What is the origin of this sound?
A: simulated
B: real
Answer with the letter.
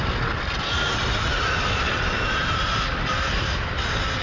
B